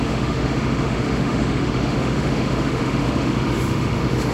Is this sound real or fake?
fake